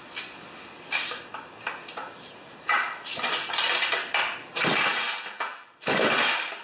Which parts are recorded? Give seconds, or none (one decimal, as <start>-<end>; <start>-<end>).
0.0-4.9; 5.7-6.6